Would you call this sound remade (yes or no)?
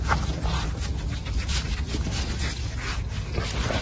no